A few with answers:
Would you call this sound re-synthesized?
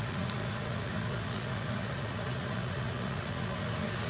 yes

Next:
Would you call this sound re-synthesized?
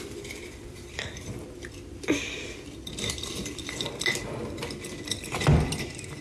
yes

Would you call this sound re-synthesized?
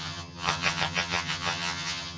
yes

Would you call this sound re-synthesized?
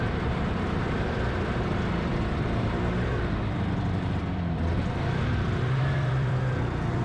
yes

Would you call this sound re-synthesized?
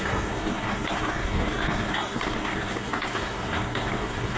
yes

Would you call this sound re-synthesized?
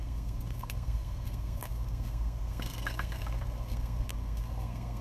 yes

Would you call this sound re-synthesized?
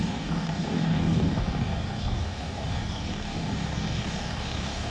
yes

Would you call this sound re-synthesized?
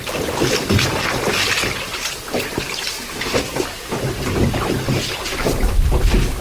no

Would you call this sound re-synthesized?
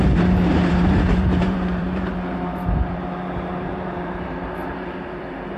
yes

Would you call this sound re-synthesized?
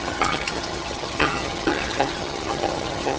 yes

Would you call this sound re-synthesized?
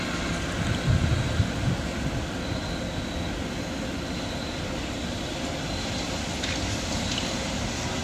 no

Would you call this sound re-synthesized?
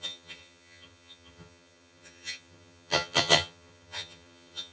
yes